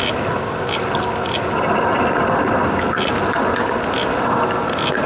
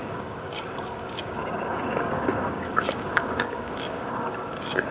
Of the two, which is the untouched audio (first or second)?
first